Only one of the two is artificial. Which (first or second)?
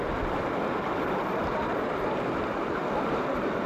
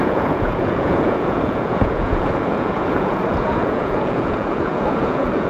second